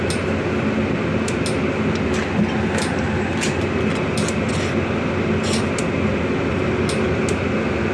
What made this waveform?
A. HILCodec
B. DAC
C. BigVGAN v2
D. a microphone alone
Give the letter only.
D